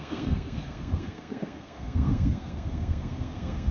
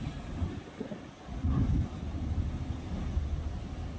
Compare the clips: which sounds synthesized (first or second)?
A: first